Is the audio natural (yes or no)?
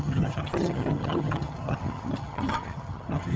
no